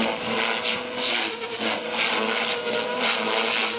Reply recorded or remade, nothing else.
recorded